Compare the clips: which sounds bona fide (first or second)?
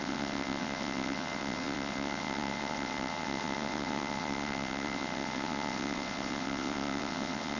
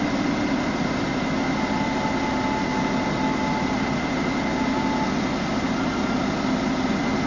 second